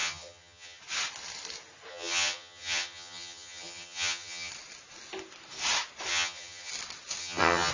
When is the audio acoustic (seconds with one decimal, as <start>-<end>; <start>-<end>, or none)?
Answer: 0.8-1.9; 4.5-6.1; 6.7-7.2